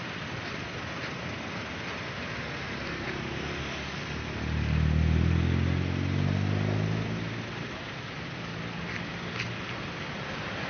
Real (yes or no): yes